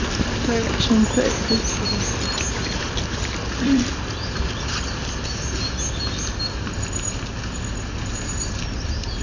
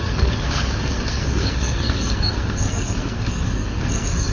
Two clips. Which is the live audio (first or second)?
first